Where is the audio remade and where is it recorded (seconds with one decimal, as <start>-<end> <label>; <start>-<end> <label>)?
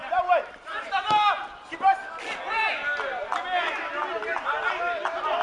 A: 0.0-5.4 recorded